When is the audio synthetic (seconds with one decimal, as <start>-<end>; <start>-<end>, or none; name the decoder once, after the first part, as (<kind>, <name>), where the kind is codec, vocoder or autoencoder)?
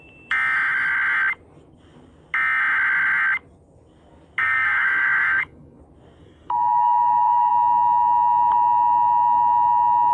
4.4-5.8 (codec, DAC); 6.2-7.5